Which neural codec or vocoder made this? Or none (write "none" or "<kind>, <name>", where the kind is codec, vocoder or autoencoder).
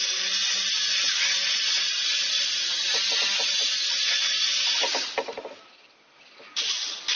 none